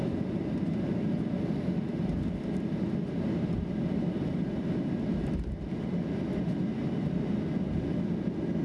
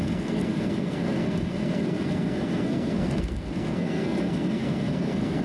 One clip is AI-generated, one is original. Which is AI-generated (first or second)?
second